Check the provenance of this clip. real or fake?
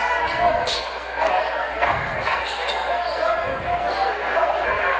fake